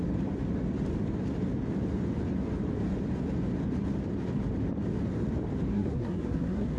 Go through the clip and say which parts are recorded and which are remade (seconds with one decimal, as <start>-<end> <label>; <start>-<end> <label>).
0.0-5.7 recorded; 5.7-6.8 remade